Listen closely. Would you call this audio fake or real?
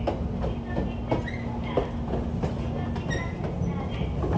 real